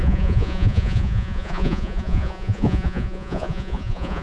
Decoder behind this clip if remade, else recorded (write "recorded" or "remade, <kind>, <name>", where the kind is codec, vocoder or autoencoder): remade, vocoder, Vocos